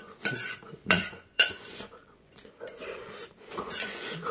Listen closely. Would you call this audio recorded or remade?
remade